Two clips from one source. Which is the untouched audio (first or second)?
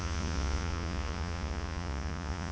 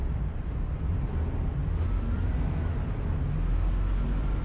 second